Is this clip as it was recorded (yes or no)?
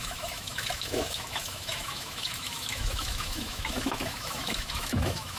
no